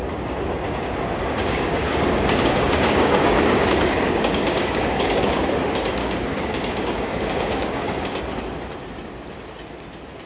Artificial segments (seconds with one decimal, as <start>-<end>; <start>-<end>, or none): 1.2-5.5; 6.0-8.2